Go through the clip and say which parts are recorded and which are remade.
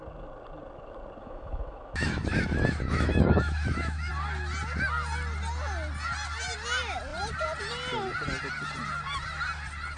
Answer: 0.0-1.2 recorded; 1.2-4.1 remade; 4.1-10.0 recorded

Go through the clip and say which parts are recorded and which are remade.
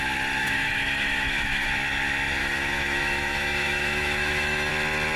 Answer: 0.0-0.4 recorded; 0.4-1.7 remade; 1.7-2.4 recorded; 2.4-4.7 remade; 4.7-5.2 recorded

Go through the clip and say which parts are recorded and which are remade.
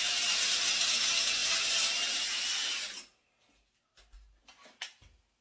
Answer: 0.0-5.4 recorded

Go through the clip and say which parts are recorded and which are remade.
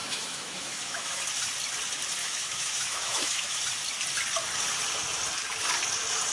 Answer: 0.0-1.2 remade; 1.2-2.2 recorded; 2.2-3.6 remade; 3.6-6.3 recorded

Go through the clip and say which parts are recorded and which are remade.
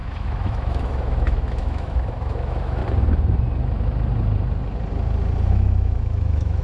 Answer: 0.0-2.8 remade; 2.8-5.5 recorded; 5.5-6.6 remade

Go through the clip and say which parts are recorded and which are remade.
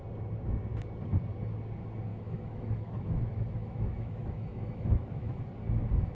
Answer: 0.0-2.1 recorded; 2.1-3.2 remade; 3.2-3.6 recorded; 3.6-5.4 remade; 5.4-6.1 recorded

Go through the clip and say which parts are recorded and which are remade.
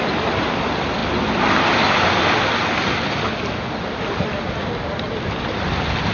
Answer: 0.0-6.1 recorded